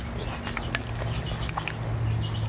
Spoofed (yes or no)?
no